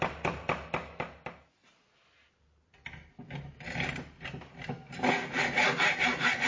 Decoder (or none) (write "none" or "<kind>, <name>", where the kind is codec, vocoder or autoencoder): none